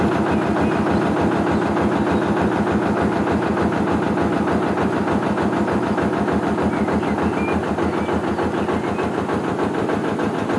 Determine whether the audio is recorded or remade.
recorded